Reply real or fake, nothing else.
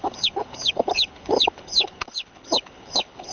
fake